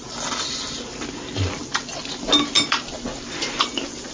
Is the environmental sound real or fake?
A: real